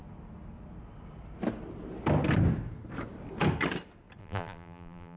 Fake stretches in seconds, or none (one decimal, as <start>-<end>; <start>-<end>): 4.2-5.2

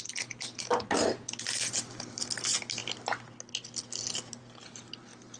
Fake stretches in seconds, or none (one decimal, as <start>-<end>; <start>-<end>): none